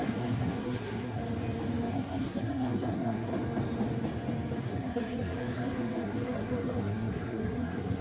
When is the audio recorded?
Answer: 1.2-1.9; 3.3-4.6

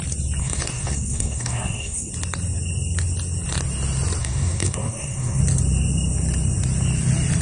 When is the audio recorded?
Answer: 0.0-0.4; 2.1-4.2; 5.4-7.4

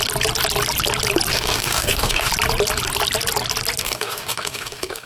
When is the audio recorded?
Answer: 0.0-1.3; 2.3-3.8

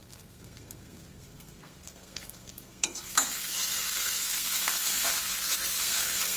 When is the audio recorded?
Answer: none

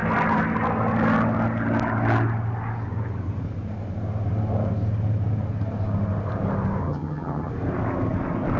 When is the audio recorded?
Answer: 0.0-6.8; 7.5-8.6

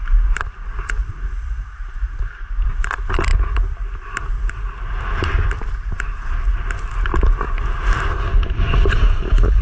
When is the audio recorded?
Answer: 0.0-9.6

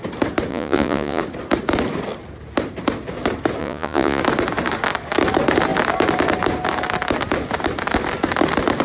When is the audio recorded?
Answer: 0.0-0.5; 1.2-3.6; 4.2-8.8